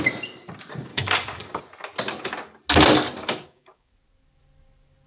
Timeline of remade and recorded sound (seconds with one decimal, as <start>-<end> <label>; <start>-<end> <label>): 0.0-0.9 recorded; 0.9-1.6 remade; 1.6-3.2 recorded; 3.2-3.9 remade; 3.9-5.1 recorded